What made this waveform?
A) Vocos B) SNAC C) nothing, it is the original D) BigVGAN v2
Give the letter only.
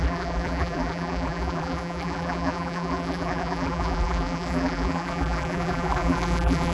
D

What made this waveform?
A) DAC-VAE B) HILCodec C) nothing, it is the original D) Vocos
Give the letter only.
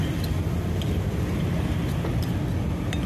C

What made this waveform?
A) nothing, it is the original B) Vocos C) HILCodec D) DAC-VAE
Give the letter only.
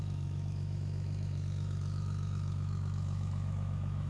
D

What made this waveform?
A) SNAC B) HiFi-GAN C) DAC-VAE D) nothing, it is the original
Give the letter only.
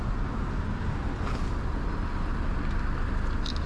D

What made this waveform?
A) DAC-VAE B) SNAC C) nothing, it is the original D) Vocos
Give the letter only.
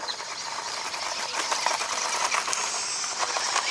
C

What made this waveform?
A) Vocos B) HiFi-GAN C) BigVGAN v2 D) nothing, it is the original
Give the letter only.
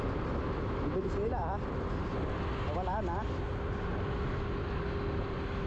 D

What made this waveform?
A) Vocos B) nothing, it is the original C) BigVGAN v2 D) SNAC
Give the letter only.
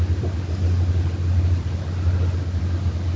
B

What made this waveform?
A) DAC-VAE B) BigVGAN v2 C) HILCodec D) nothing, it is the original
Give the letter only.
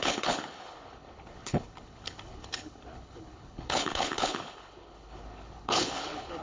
C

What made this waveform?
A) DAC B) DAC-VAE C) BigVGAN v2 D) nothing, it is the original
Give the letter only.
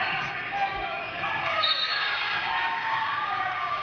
A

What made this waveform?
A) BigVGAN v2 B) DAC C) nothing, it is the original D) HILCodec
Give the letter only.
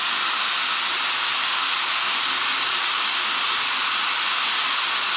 C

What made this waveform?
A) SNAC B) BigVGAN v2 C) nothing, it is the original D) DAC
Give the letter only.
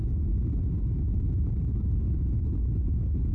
B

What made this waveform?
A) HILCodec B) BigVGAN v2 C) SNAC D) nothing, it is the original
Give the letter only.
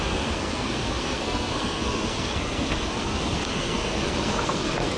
C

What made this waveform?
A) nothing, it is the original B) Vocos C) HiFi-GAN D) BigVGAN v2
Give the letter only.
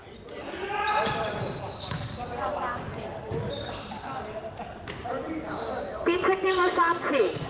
D